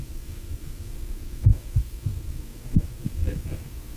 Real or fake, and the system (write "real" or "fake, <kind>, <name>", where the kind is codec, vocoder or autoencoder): fake, codec, SNAC